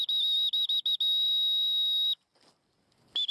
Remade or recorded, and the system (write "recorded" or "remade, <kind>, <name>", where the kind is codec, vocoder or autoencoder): recorded